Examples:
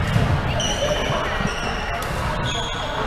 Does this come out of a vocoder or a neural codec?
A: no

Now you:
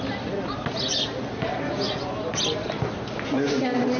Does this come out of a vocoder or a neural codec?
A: no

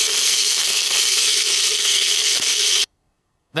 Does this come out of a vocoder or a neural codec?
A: yes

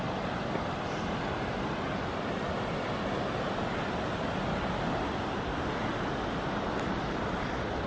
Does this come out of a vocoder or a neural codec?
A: no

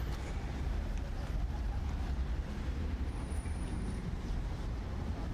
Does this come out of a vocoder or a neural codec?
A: yes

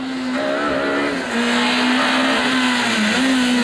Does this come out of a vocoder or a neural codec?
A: no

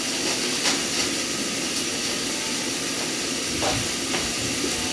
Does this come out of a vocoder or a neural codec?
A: no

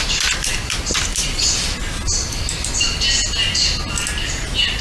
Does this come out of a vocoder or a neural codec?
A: no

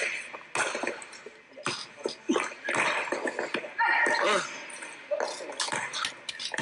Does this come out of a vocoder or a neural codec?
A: no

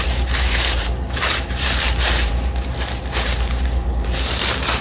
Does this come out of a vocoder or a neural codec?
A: yes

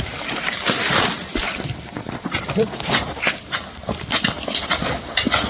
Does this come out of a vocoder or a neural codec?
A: yes